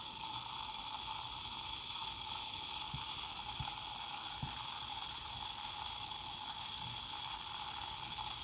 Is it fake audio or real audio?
real